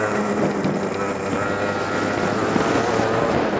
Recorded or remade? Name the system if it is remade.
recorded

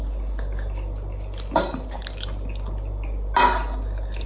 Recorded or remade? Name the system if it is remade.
recorded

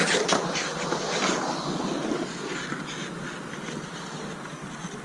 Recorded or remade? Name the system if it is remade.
recorded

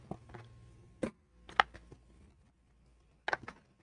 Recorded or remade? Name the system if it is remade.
recorded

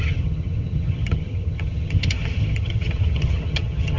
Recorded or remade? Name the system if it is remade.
remade, vocoder, HiFi-GAN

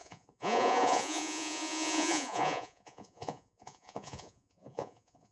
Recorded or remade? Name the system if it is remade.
remade, vocoder, Vocos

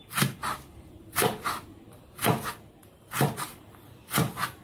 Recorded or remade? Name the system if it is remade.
remade, vocoder, BigVGAN v2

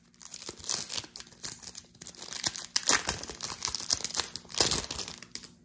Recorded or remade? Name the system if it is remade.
recorded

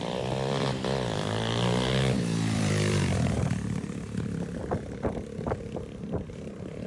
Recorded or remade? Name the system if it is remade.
remade, vocoder, BigVGAN v2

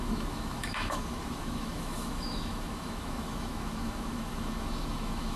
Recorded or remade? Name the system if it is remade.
remade, autoencoder, DAC-VAE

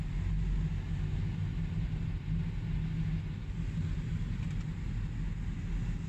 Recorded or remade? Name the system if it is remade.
recorded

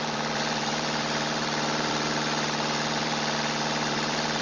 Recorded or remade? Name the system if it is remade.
remade, vocoder, BigVGAN v2